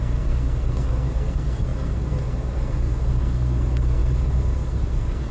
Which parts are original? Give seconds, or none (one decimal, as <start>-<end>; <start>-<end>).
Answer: none